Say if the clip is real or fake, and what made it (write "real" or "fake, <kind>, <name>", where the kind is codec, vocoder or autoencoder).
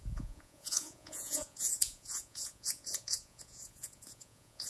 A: fake, vocoder, Vocos